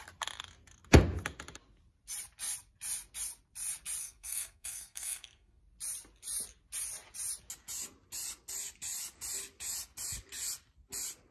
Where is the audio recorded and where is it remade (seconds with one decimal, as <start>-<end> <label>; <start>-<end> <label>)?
0.0-4.0 recorded; 4.0-5.6 remade; 5.6-11.3 recorded